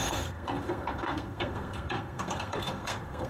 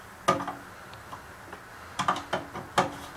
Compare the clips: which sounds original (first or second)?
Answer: second